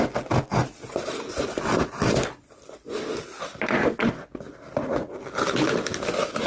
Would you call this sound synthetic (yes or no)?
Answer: no